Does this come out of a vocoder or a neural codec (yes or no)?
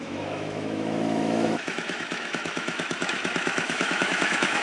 yes